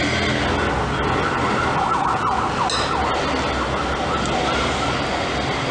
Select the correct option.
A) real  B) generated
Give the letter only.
A